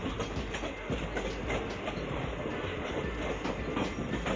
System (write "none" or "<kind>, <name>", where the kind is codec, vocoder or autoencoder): none